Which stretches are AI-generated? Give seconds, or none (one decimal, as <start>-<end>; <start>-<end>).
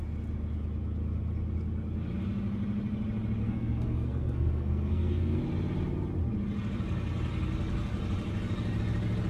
3.4-5.4